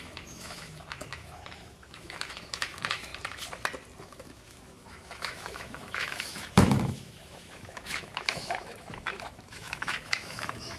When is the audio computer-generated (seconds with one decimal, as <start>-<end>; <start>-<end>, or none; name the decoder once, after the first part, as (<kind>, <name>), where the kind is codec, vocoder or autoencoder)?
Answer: 0.0-3.1 (autoencoder, DAC-VAE); 4.0-10.8

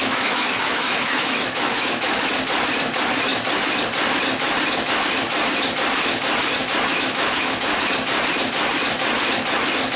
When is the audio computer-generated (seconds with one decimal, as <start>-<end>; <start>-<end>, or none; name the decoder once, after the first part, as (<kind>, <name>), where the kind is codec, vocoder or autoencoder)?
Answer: 0.0-2.3 (autoencoder, DAC-VAE); 6.9-7.9